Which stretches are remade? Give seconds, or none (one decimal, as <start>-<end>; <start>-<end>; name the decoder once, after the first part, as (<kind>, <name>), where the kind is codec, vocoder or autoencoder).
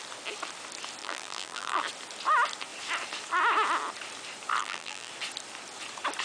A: 1.0-1.8 (vocoder, BigVGAN v2); 4.6-5.1